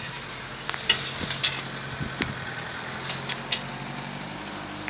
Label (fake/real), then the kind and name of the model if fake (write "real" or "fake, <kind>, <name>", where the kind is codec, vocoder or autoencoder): real